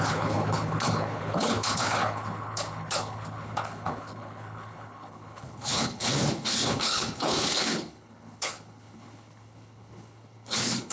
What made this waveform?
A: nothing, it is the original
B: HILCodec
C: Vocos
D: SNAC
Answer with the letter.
B